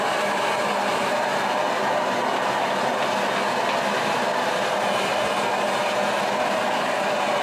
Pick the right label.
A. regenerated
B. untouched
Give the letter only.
B